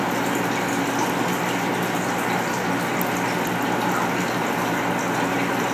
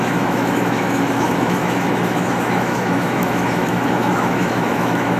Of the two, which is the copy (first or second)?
second